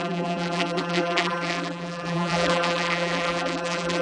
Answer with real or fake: fake